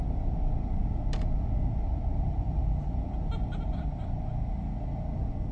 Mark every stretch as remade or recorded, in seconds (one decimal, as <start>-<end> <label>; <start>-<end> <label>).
0.0-5.5 recorded